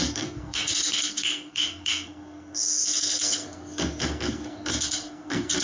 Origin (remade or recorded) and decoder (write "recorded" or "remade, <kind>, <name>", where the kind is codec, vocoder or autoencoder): remade, codec, SNAC